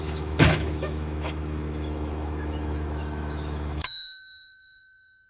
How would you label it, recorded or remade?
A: remade